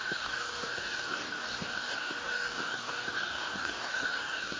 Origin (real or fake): fake